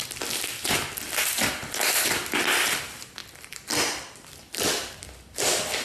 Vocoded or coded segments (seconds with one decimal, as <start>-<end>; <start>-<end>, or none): 1.6-2.3; 3.2-4.9